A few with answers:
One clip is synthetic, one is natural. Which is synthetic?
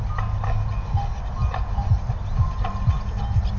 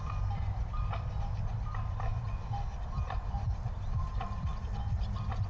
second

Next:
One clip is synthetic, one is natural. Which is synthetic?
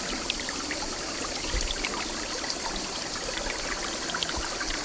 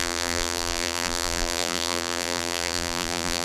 second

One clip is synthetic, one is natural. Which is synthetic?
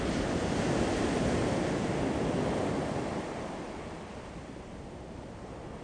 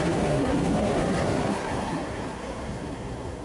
second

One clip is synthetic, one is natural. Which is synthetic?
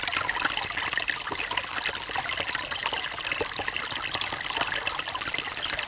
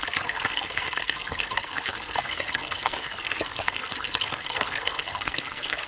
second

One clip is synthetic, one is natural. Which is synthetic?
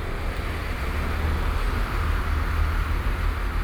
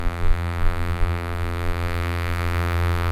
second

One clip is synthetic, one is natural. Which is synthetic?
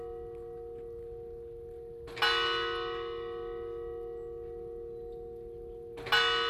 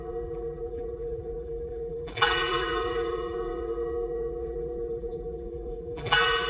second